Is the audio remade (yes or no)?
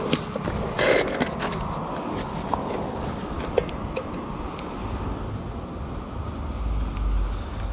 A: no